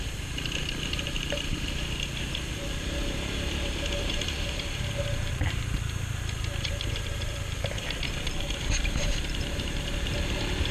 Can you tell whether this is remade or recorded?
remade